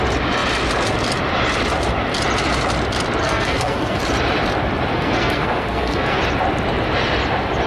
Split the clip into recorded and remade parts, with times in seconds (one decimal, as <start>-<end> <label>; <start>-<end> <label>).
0.0-3.2 recorded; 3.2-4.0 remade; 4.0-4.9 recorded; 4.9-6.2 remade; 6.2-7.7 recorded